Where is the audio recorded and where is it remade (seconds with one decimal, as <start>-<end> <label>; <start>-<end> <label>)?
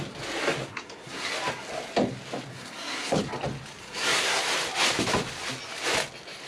0.0-0.7 recorded; 0.7-1.3 remade; 1.3-2.5 recorded; 2.5-3.2 remade; 3.2-3.8 recorded; 3.8-4.4 remade; 4.4-6.5 recorded